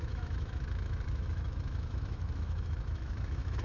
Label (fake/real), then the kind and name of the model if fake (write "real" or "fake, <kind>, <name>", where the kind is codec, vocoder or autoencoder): fake, autoencoder, DAC-VAE